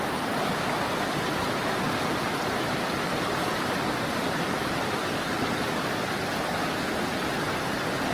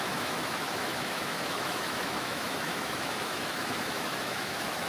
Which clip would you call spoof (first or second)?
second